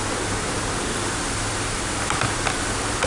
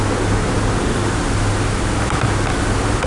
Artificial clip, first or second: first